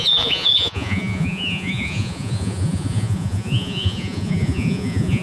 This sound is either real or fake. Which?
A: fake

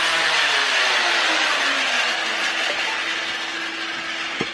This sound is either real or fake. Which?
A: real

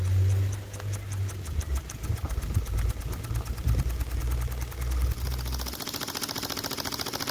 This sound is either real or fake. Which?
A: real